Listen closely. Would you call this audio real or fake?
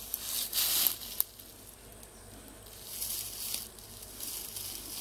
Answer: real